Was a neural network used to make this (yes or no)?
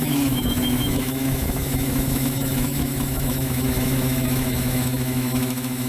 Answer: yes